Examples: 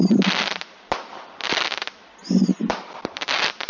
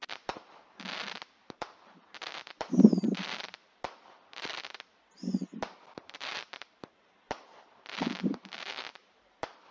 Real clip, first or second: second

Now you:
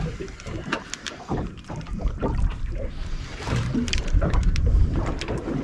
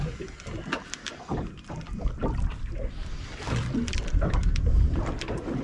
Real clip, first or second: second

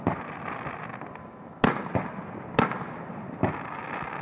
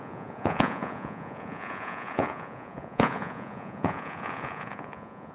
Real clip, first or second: first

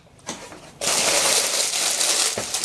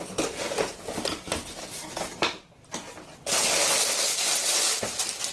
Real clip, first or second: second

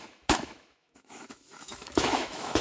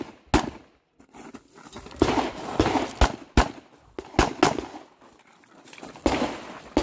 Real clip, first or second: second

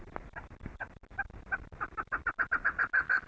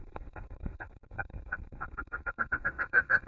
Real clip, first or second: first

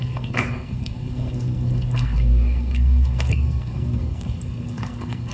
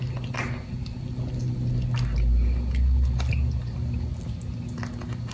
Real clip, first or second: second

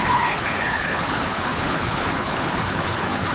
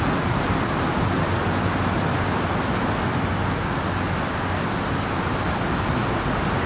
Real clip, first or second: second